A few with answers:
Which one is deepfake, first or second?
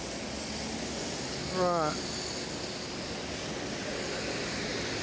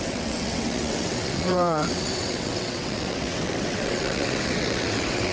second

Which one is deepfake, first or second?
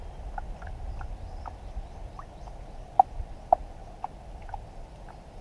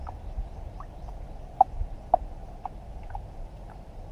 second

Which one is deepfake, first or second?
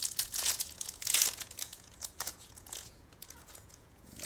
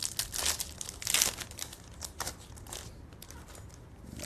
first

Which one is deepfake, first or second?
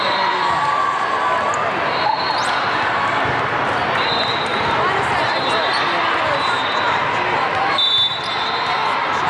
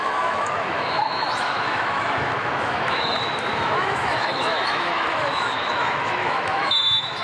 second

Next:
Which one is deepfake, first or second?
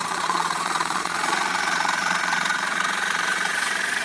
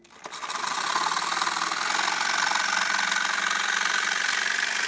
first